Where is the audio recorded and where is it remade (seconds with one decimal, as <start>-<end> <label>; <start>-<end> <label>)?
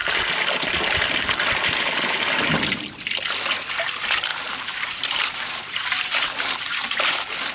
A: 0.0-4.3 recorded; 4.3-7.5 remade